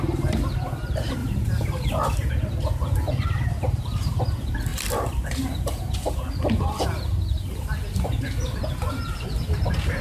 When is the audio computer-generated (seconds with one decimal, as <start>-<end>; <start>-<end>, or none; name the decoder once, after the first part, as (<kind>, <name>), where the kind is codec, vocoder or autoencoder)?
1.2-2.3 (vocoder, BigVGAN v2)